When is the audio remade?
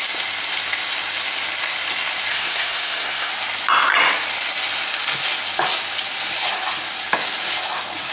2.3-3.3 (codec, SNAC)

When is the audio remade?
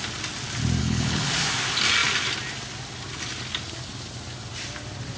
0.8-1.3 (codec, HILCodec)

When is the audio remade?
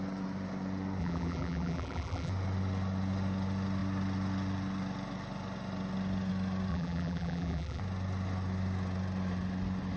1.0-2.3 (vocoder, BigVGAN v2); 6.7-7.8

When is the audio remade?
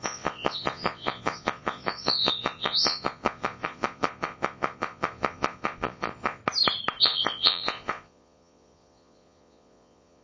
0.0-6.4 (vocoder, Vocos); 7.0-10.2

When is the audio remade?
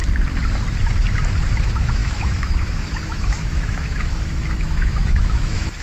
1.6-5.8 (autoencoder, DAC-VAE)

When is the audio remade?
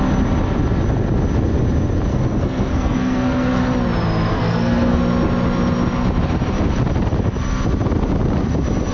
2.1-3.6 (codec, SNAC); 4.3-5.0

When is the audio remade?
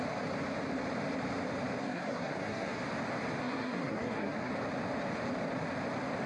1.8-2.8 (codec, SNAC); 3.4-4.5